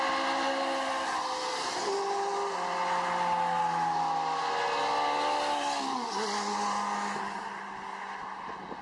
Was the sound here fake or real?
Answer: real